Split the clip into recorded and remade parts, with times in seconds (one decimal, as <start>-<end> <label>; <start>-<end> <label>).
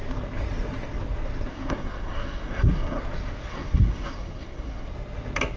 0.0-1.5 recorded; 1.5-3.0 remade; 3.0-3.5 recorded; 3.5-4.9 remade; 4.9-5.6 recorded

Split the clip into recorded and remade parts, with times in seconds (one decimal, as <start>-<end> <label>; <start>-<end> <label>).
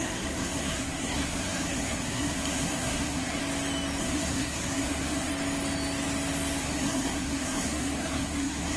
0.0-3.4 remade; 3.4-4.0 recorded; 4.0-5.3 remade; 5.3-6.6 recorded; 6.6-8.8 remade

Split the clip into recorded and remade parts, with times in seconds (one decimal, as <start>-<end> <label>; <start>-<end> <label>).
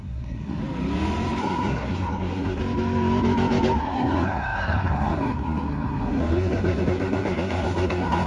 0.0-0.6 remade; 0.6-1.4 recorded; 1.4-2.6 remade; 2.6-3.8 recorded; 3.8-8.3 remade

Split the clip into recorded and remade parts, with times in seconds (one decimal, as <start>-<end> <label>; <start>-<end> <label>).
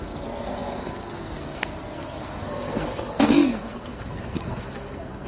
0.0-5.3 remade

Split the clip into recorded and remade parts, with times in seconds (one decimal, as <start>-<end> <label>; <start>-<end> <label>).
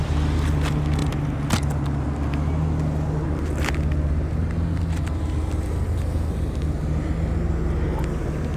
0.0-8.6 recorded